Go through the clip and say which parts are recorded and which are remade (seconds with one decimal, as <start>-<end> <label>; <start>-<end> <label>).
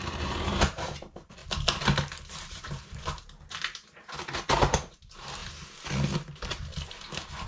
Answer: 0.0-1.4 remade; 1.4-2.4 recorded; 2.4-5.4 remade; 5.4-7.5 recorded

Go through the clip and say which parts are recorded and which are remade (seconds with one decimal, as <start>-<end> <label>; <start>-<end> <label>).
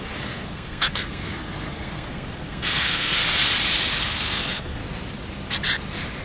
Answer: 0.0-3.2 remade; 3.2-3.9 recorded; 3.9-4.8 remade; 4.8-6.2 recorded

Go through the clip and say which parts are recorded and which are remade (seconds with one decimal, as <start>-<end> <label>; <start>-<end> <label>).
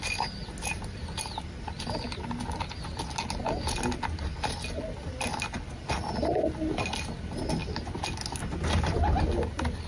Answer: 0.0-9.9 recorded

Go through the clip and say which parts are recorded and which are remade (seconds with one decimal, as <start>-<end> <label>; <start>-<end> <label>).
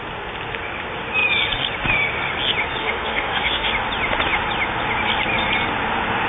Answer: 0.0-2.8 recorded; 2.8-3.7 remade; 3.7-6.3 recorded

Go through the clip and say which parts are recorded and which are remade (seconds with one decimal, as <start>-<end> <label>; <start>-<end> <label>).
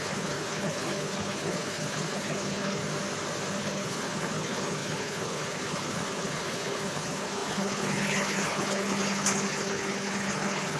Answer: 0.0-2.8 remade; 2.8-3.6 recorded; 3.6-10.8 remade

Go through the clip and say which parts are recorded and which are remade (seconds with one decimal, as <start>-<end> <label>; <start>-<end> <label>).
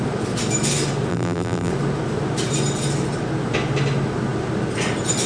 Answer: 0.0-1.1 recorded; 1.1-1.7 remade; 1.7-5.3 recorded